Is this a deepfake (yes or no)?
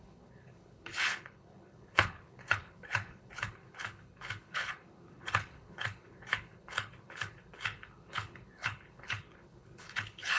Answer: yes